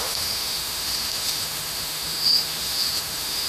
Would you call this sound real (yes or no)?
no